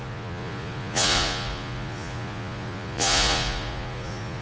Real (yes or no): no